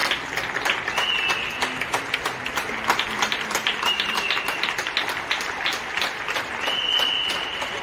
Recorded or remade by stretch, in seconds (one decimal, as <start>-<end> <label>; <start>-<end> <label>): 0.0-3.6 recorded; 3.6-4.3 remade; 4.3-7.8 recorded